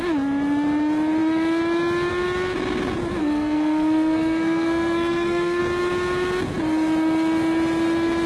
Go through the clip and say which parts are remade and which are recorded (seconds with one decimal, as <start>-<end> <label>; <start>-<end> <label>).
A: 0.0-3.2 recorded; 3.2-5.6 remade; 5.6-8.3 recorded

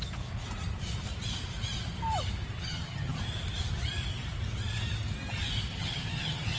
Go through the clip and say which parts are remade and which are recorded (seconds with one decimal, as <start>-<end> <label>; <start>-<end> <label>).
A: 0.0-2.6 recorded; 2.6-3.2 remade; 3.2-5.7 recorded; 5.7-6.6 remade

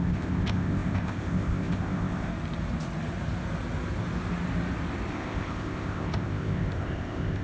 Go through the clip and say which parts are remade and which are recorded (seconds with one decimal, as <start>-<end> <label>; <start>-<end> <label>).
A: 0.0-2.3 remade; 2.3-5.1 recorded; 5.1-7.4 remade

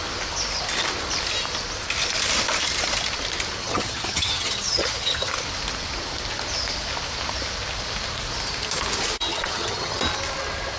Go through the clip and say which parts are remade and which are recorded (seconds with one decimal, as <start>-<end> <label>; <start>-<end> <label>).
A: 0.0-3.6 recorded; 3.6-5.3 remade; 5.3-9.3 recorded; 9.3-10.0 remade; 10.0-10.8 recorded